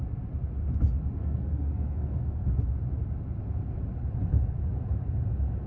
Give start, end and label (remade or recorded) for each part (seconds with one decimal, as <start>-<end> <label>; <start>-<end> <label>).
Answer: 0.0-1.2 recorded; 1.2-2.6 remade; 2.6-5.7 recorded